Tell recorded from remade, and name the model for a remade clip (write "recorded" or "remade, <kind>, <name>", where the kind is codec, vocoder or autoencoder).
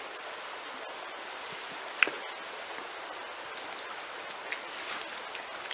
recorded